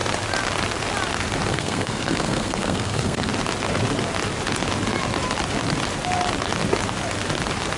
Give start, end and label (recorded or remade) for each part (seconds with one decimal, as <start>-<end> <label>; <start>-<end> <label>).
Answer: 0.0-1.5 recorded; 1.5-3.3 remade; 3.3-7.8 recorded